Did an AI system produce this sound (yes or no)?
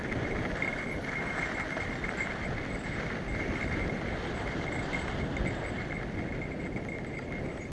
no